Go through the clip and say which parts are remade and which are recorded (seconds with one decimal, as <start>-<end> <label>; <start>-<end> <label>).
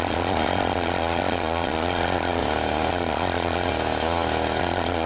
0.0-2.4 remade; 2.4-2.9 recorded; 2.9-3.7 remade; 3.7-4.6 recorded; 4.6-5.1 remade